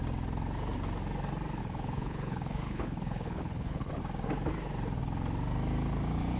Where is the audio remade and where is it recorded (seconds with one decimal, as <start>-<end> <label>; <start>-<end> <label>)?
0.0-1.6 recorded; 1.6-4.0 remade; 4.0-6.4 recorded